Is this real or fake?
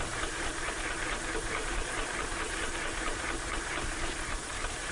fake